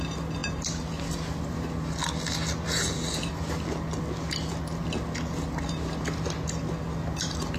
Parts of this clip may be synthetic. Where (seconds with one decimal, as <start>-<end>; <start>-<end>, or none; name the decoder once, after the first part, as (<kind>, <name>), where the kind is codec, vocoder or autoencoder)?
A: none